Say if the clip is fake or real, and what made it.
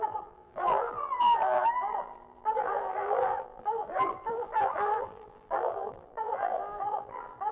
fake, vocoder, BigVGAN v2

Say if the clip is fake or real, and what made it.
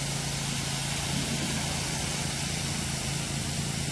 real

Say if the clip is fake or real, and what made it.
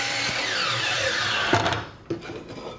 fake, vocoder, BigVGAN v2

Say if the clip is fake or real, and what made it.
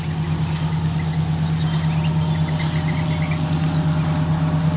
real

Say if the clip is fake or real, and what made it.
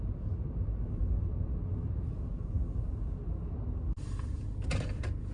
real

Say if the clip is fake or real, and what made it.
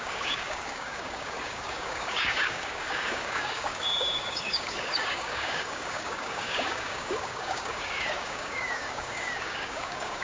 fake, codec, DAC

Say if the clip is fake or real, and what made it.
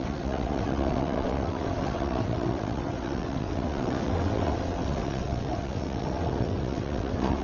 fake, vocoder, WaveNeXt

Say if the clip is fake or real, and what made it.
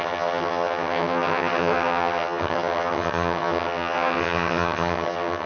fake, vocoder, HiFi-GAN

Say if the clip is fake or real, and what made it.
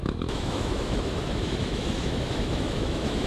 fake, autoencoder, DAC-VAE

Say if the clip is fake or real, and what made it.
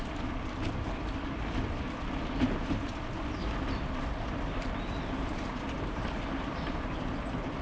fake, vocoder, BigVGAN v2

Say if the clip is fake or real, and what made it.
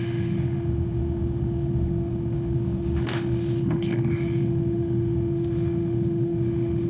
fake, autoencoder, DAC-VAE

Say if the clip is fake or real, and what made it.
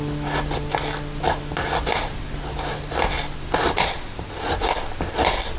real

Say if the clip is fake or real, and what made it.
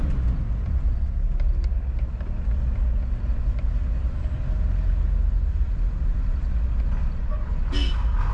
real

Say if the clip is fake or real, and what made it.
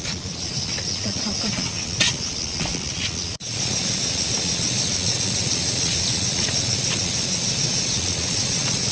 fake, vocoder, Vocos